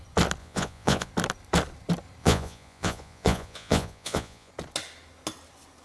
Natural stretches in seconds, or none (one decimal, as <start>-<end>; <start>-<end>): 0.0-0.4; 1.1-2.2; 4.5-5.8